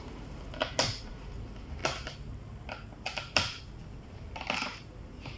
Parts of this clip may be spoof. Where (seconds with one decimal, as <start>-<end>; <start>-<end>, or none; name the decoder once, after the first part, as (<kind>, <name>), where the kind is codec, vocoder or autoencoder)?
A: none